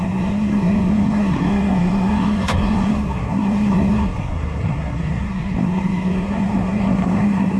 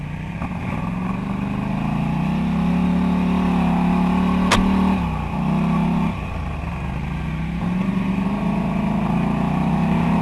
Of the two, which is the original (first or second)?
second